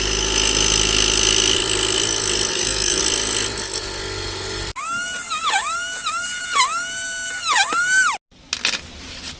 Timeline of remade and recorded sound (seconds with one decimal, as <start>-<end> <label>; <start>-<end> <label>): 0.0-2.5 recorded; 2.5-3.0 remade; 3.0-9.4 recorded